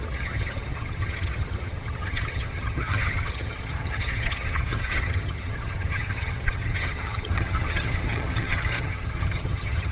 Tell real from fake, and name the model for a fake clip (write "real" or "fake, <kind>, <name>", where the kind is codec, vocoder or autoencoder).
fake, vocoder, HiFi-GAN